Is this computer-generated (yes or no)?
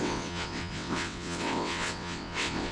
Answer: yes